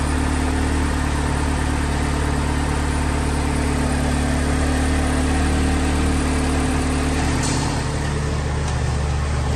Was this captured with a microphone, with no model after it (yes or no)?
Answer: yes